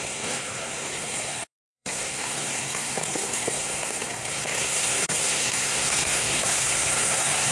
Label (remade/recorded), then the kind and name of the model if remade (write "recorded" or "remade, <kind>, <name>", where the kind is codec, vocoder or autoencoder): remade, codec, SNAC